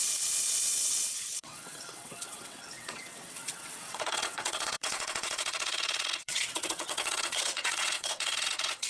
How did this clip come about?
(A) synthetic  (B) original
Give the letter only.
A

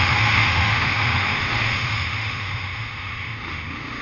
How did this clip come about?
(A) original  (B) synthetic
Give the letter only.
B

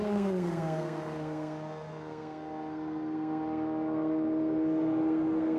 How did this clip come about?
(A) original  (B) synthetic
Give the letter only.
B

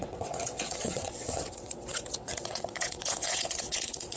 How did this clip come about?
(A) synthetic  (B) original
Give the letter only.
A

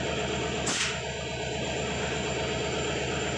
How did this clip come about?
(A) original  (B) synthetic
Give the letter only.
A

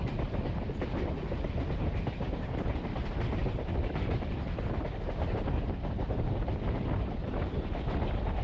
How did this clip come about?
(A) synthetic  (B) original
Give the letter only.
B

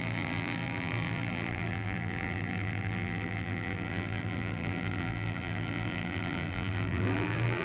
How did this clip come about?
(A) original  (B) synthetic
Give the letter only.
B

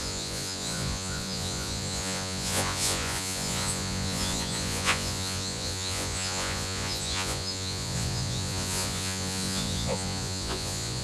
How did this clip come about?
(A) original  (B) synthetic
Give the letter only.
B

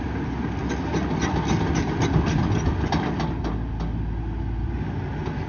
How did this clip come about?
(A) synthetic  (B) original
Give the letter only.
B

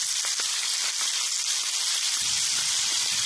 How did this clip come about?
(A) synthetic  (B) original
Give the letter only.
B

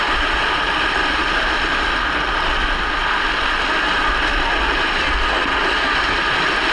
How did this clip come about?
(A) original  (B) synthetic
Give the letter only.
A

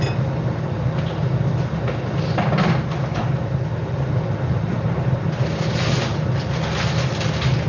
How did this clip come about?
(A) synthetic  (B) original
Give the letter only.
B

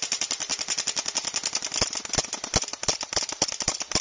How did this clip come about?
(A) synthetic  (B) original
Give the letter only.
B